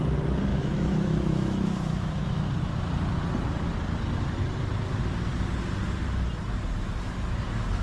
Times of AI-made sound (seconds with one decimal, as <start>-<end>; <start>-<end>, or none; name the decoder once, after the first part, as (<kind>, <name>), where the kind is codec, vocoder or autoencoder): 0.5-2.5 (autoencoder, DAC-VAE)